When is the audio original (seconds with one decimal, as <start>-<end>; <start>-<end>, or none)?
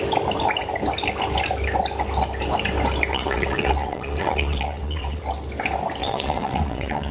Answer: 0.0-3.1; 5.2-6.0